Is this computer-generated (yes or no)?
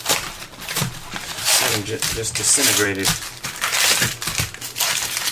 yes